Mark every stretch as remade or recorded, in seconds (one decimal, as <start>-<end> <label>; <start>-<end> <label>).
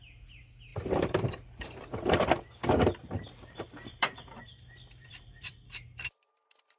0.0-0.7 recorded; 0.7-2.3 remade; 2.3-3.0 recorded; 3.0-6.8 remade